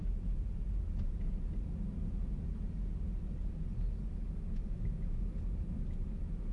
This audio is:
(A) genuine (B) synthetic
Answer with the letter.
A